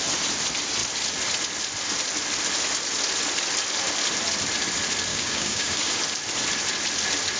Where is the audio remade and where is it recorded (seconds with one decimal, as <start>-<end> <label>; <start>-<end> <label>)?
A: 0.0-5.1 recorded; 5.1-6.0 remade; 6.0-7.4 recorded